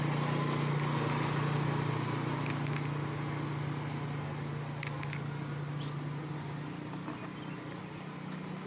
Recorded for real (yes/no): yes